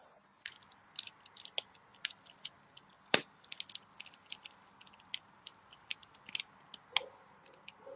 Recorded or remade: recorded